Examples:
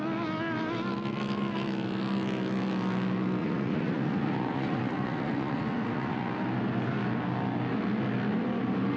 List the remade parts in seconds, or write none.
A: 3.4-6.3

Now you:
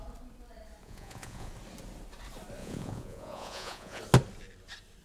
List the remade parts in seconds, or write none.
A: 0.8-1.5; 2.6-4.0

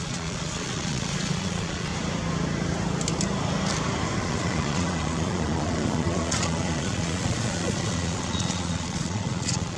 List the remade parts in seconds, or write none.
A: 0.0-1.9; 4.2-9.8

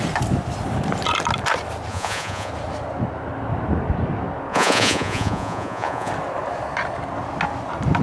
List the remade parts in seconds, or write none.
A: 1.9-2.5; 4.5-6.1

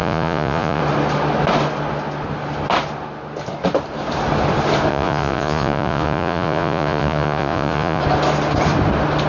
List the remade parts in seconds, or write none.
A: 0.0-0.8; 4.9-8.0